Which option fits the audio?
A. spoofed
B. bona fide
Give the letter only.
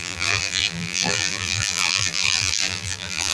A